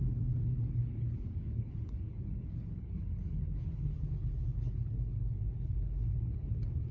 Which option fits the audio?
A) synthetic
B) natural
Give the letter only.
A